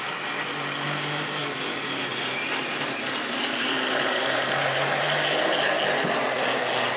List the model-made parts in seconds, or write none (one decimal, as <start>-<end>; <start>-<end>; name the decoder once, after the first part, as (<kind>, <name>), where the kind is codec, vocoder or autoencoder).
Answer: 1.4-5.6 (vocoder, BigVGAN v2)